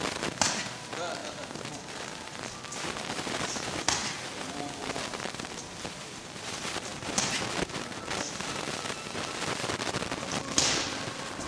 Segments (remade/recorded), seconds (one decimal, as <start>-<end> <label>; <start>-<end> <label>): 0.0-4.0 remade; 4.0-4.5 recorded; 4.5-11.5 remade